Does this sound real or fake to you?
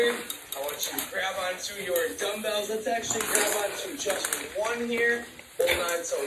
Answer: real